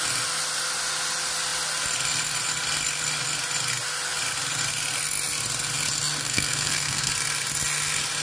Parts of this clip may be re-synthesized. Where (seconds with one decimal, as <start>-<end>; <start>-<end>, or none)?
6.2-7.1